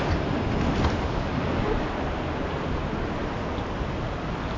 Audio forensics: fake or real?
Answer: real